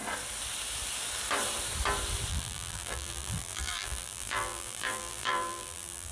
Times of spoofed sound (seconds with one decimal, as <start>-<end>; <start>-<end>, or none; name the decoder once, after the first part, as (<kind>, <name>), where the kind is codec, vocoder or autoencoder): 2.3-6.1 (vocoder, BigVGAN v2)